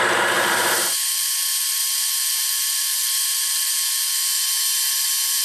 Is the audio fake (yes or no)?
yes